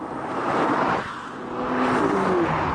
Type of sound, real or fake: real